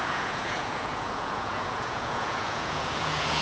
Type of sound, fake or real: fake